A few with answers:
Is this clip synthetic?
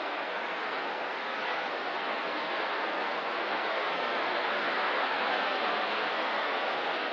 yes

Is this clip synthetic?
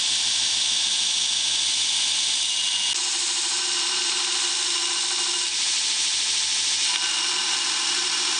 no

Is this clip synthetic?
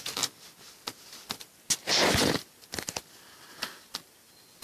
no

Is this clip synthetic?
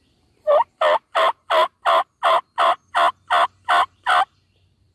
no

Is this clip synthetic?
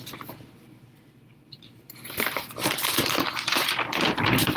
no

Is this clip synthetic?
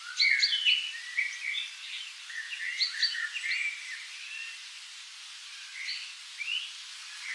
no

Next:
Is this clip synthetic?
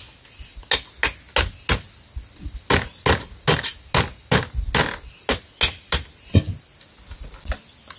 no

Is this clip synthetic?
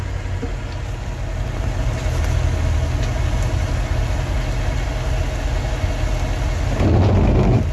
no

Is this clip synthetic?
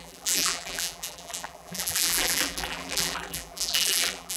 yes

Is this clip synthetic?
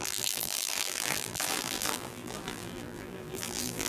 yes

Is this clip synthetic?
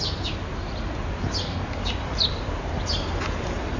no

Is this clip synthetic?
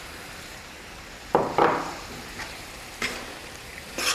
yes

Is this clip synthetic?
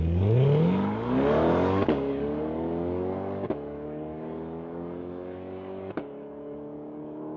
yes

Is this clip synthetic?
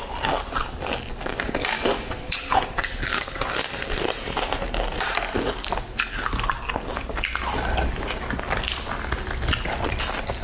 no